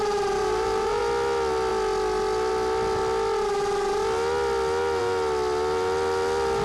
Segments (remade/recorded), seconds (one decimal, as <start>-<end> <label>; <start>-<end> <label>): 0.0-0.4 recorded; 0.4-1.0 remade; 1.0-6.6 recorded